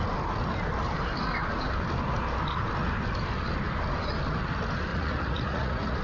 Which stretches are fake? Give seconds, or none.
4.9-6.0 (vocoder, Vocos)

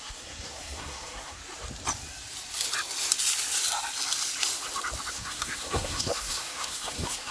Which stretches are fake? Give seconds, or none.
0.0-1.4 (codec, SNAC); 5.1-7.3

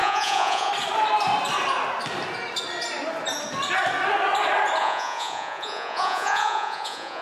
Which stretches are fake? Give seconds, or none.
0.0-0.7 (vocoder, Vocos); 4.8-7.2

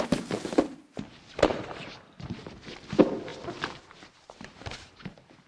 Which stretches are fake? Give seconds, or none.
1.5-2.4 (vocoder, BigVGAN v2); 3.3-5.5

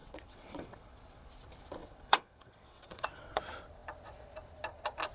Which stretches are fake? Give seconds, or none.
0.0-1.2 (vocoder, WaveNeXt); 1.8-3.4

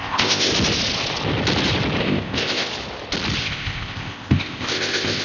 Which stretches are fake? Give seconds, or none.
0.0-0.5 (codec, ZipCodec); 2.0-2.7; 3.4-5.2